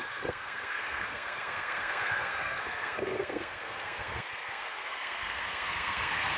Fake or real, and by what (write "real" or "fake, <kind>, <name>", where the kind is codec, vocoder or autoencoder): fake, codec, SNAC